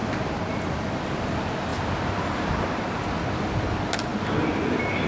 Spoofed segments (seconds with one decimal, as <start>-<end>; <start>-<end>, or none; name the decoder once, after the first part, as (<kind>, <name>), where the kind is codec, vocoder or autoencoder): 0.0-0.5 (vocoder, BigVGAN v2)